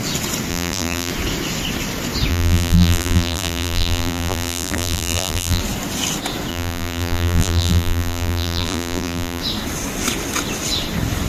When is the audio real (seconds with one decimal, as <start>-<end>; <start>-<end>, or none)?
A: 0.0-0.5; 1.1-2.3; 5.6-6.5; 9.4-11.3